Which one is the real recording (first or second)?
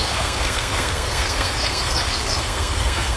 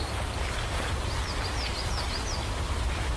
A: second